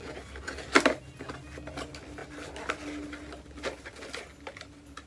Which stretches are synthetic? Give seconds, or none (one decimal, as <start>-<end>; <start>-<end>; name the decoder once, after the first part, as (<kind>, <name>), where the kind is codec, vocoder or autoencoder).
none

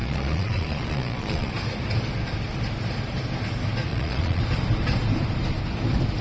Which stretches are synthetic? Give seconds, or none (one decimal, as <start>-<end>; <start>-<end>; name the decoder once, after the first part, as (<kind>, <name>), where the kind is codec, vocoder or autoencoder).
0.0-1.5 (vocoder, Vocos); 3.9-4.4

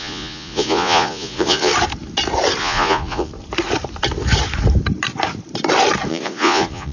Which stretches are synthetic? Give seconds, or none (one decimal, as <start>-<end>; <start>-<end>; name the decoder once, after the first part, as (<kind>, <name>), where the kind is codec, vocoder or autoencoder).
0.0-1.7 (vocoder, Vocos); 2.6-3.3; 6.1-6.9

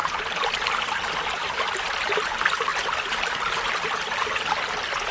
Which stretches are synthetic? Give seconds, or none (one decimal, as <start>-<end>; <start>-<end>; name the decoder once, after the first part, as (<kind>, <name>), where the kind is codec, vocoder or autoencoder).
none

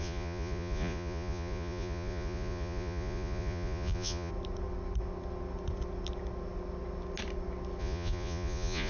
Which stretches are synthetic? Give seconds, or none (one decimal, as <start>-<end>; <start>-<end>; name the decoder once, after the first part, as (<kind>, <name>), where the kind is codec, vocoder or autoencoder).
0.0-4.3 (vocoder, Vocos); 7.8-8.9